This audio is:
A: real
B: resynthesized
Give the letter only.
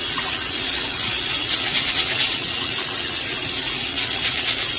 B